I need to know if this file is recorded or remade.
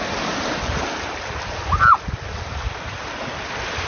recorded